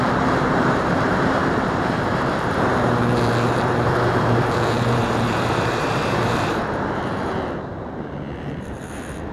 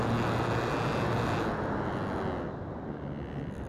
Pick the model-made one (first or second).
first